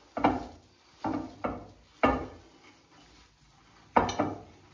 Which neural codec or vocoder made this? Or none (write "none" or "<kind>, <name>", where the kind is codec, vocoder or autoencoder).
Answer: none